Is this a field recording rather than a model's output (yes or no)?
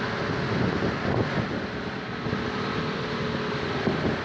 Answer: yes